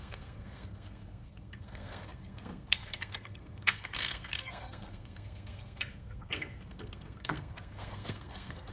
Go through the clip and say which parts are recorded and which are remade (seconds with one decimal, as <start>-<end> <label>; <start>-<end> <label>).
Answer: 0.0-8.7 remade